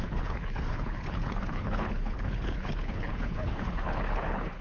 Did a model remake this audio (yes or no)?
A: yes